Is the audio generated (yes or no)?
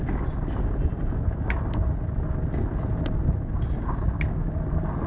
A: no